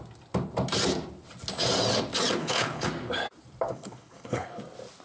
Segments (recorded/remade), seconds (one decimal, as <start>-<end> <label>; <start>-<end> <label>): 0.0-2.4 recorded; 2.4-2.9 remade; 2.9-3.7 recorded; 3.7-4.6 remade; 4.6-5.0 recorded